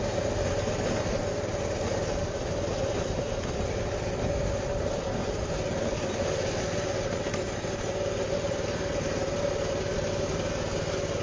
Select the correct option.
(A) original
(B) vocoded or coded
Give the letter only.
A